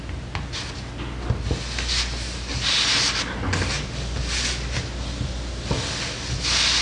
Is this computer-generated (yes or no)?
no